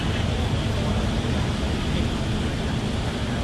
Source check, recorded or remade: recorded